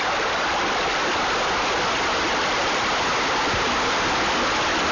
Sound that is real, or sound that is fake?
real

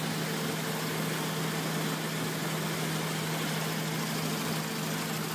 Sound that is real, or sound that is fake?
real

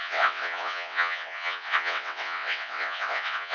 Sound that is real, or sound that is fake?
fake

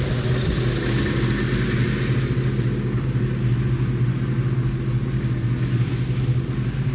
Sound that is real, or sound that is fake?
real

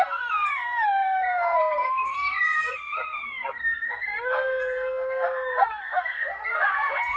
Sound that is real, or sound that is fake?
fake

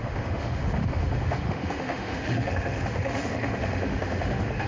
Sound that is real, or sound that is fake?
fake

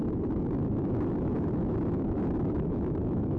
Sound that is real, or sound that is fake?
fake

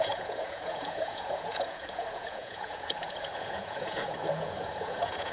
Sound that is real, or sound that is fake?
fake